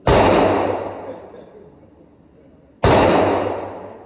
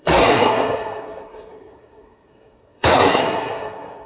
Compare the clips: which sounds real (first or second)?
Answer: first